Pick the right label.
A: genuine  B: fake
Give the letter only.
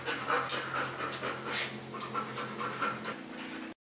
A